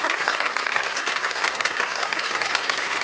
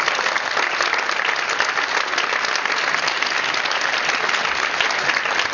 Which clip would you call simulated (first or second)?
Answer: first